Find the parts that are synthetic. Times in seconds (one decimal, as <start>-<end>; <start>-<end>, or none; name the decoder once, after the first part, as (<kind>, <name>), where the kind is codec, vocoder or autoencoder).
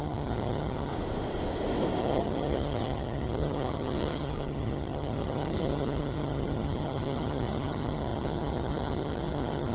0.0-0.9 (vocoder, HiFi-GAN); 2.0-9.7